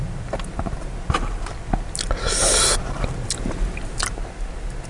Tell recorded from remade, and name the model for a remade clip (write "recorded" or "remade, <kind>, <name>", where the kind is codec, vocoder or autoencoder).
recorded